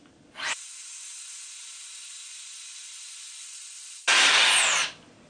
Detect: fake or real real